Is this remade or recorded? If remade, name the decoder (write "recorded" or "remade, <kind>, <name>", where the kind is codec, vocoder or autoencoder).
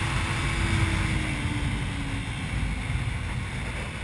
recorded